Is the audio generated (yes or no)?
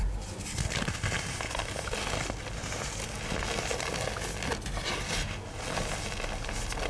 no